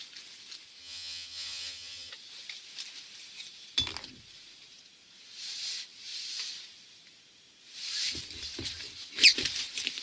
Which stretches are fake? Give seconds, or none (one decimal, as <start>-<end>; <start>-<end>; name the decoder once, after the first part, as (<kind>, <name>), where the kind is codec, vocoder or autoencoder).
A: 0.8-2.1 (vocoder, HiFi-GAN)